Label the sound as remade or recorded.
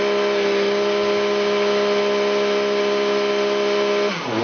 recorded